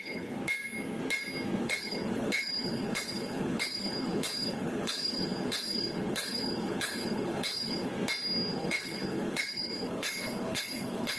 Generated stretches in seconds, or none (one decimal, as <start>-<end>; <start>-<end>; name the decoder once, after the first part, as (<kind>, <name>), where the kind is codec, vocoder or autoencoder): 0.0-0.4 (codec, HILCodec); 1.6-7.9; 8.5-11.2